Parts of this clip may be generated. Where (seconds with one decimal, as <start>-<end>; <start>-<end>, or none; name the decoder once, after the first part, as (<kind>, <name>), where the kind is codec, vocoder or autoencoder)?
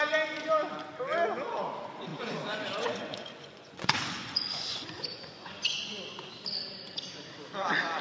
2.1-6.3 (vocoder, Vocos)